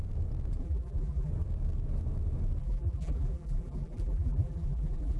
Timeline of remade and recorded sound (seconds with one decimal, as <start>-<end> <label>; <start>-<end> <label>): 0.0-0.6 recorded; 0.6-1.3 remade; 1.3-2.6 recorded; 2.6-5.2 remade